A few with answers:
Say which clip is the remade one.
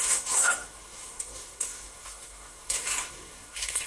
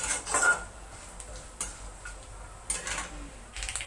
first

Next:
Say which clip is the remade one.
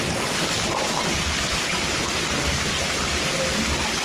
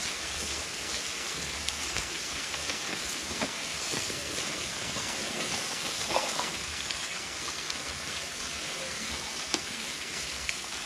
second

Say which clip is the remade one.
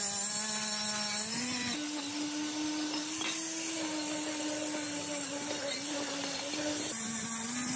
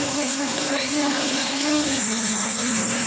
second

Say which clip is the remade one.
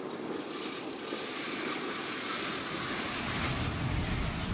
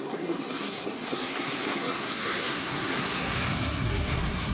second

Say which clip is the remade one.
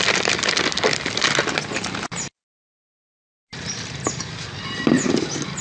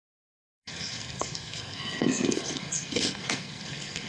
second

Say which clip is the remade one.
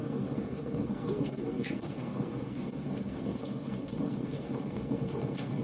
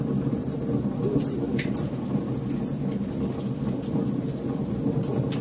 first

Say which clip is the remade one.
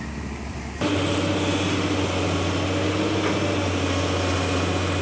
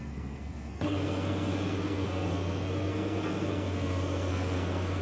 second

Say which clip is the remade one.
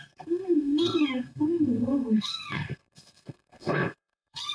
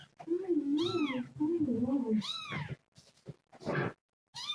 first